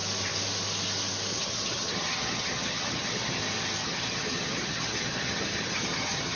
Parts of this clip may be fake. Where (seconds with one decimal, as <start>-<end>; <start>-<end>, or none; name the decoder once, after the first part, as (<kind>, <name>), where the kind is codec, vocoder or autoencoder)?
1.3-3.4 (vocoder, HiFi-GAN); 3.8-6.4